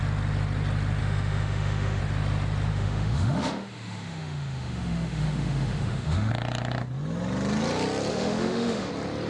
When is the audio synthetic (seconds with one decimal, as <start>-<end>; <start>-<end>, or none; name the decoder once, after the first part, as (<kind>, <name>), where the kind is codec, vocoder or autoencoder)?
1.0-2.0 (autoencoder, DAC-VAE); 2.7-6.3; 8.1-8.9